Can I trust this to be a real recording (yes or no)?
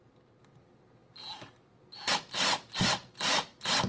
yes